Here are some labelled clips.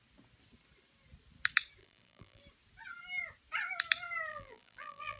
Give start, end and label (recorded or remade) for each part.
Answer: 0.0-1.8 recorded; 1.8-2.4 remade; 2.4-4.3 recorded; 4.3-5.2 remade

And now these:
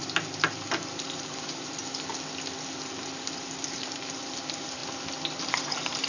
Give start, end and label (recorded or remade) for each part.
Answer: 0.0-0.5 recorded; 0.5-1.8 remade; 1.8-3.0 recorded; 3.0-4.8 remade; 4.8-5.4 recorded; 5.4-6.1 remade

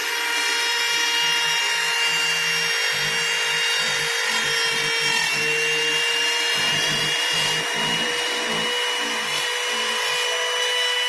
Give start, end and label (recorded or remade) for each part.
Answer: 0.0-1.6 remade; 1.6-5.8 recorded; 5.8-8.5 remade; 8.5-11.1 recorded

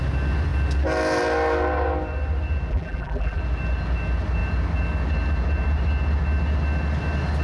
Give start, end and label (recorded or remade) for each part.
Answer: 0.0-2.7 recorded; 2.7-3.4 remade; 3.4-7.4 recorded

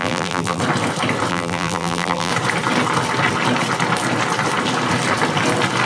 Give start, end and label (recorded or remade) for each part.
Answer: 0.0-0.6 remade; 0.6-1.3 recorded; 1.3-2.3 remade; 2.3-5.9 recorded

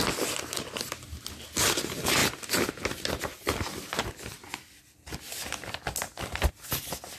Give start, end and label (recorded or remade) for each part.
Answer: 0.0-7.2 recorded

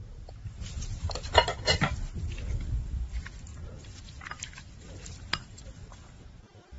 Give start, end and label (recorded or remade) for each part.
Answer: 0.0-3.5 recorded; 3.5-6.8 remade